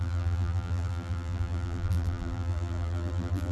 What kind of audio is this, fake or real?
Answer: fake